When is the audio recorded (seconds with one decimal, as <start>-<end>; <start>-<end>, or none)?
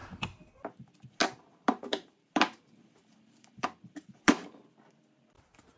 0.0-1.2; 4.6-5.8